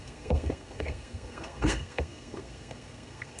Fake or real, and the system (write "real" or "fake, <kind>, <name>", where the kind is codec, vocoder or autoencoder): fake, codec, SNAC